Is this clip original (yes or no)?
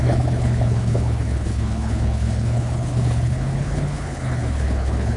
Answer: no